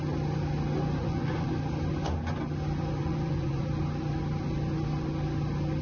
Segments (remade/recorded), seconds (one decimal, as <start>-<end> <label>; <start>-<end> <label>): 0.0-1.0 recorded; 1.0-1.5 remade; 1.5-3.0 recorded; 3.0-3.6 remade; 3.6-5.8 recorded